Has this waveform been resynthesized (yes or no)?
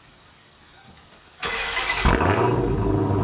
yes